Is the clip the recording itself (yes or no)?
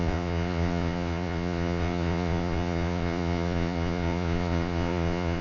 no